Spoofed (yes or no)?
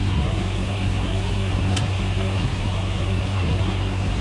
yes